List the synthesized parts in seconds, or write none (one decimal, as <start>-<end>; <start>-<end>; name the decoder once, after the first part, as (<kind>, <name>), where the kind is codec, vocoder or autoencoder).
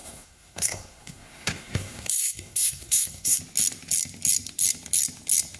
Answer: 0.0-3.4 (codec, SNAC)